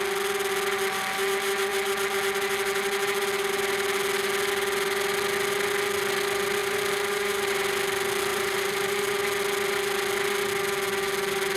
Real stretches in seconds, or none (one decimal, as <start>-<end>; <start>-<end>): 0.0-6.6; 7.5-8.3; 9.1-11.6